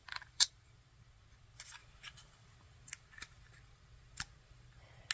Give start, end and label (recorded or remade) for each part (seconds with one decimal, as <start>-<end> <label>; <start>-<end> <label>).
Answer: 0.0-0.6 remade; 0.6-5.1 recorded

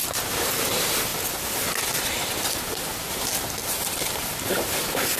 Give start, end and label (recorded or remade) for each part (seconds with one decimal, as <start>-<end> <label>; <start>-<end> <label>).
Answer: 0.0-3.6 recorded; 3.6-4.8 remade; 4.8-5.2 recorded